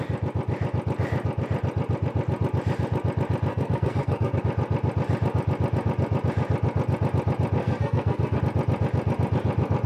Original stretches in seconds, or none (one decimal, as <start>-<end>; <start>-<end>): 0.0-3.5; 4.4-7.6; 8.4-9.9